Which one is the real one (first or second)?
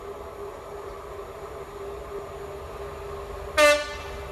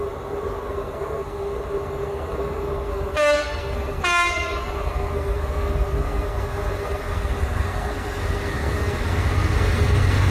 first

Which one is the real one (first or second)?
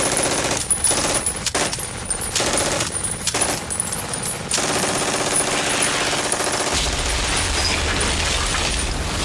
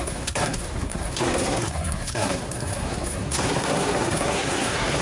first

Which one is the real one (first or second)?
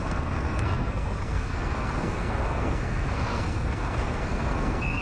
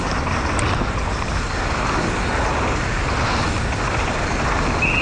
second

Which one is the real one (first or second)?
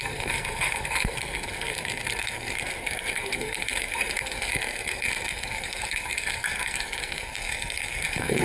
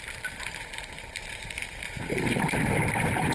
second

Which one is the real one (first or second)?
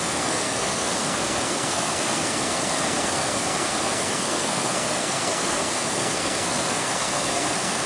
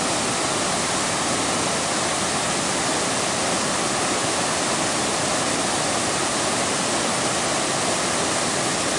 second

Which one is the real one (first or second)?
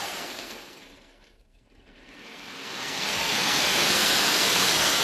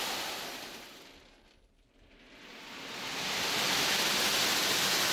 second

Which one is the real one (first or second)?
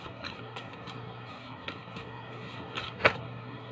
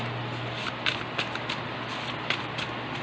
second